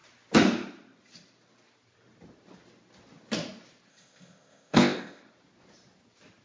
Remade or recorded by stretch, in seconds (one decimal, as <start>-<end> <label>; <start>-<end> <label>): 0.0-3.9 recorded; 3.9-5.2 remade; 5.2-6.4 recorded